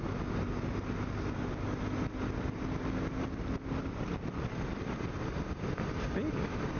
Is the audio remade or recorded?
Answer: recorded